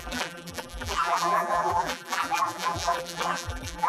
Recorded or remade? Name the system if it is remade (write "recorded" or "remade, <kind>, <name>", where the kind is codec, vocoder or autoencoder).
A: remade, vocoder, BigVGAN v2